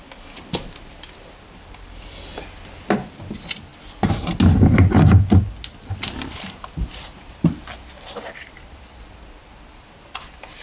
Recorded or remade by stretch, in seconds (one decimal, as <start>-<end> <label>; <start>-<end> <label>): 0.0-10.6 recorded